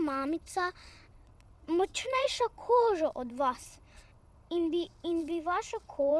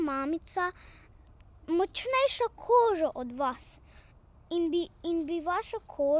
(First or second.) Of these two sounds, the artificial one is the first